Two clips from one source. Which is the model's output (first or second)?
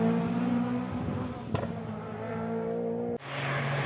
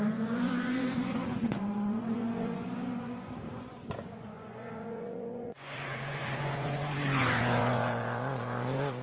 second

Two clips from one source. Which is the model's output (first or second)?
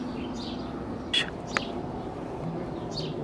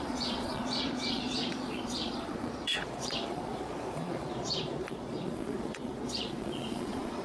second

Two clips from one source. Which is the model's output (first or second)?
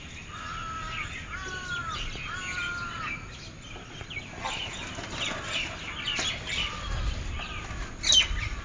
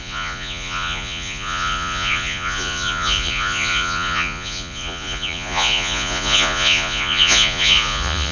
second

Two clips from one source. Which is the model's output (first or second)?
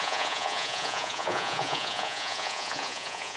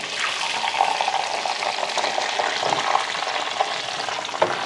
first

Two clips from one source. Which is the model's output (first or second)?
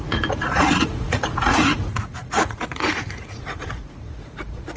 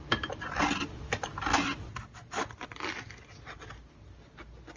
first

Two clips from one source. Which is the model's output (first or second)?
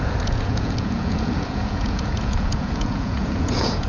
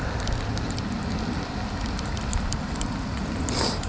first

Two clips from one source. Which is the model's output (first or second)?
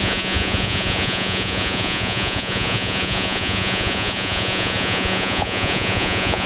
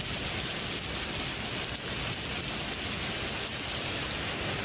first